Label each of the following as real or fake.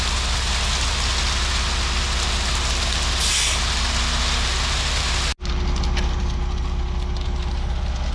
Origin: real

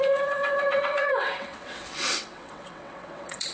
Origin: fake